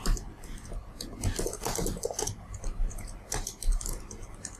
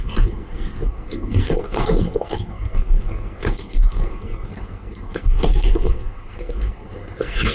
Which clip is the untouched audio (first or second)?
first